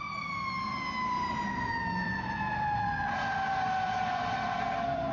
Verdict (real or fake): fake